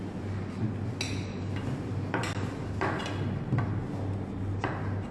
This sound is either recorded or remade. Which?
recorded